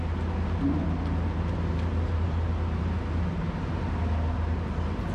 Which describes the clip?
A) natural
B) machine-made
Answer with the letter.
A